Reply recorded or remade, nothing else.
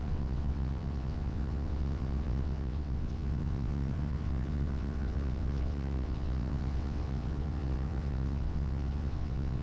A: remade